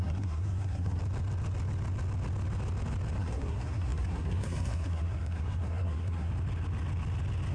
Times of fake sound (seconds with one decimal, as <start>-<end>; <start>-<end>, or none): 0.0-1.0; 3.2-6.3